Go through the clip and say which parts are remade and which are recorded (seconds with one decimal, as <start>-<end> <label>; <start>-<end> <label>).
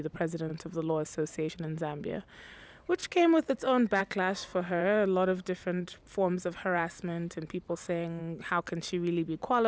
0.0-0.5 recorded; 0.5-1.5 remade; 1.5-4.5 recorded; 4.5-8.2 remade; 8.2-9.7 recorded